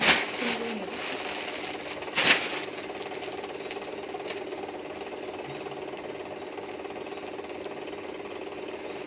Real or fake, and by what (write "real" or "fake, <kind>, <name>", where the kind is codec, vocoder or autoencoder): real